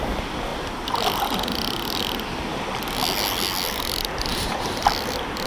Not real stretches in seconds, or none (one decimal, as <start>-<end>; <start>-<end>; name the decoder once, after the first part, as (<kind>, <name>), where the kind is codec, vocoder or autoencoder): none

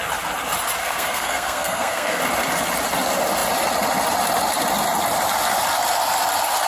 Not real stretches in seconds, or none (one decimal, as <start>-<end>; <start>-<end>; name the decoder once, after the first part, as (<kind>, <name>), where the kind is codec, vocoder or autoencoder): 0.8-2.2 (codec, SNAC)

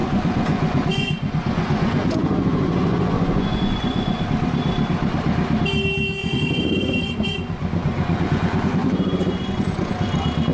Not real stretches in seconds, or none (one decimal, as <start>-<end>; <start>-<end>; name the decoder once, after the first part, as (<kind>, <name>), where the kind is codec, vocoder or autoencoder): 0.0-4.2 (vocoder, Vocos); 6.2-9.9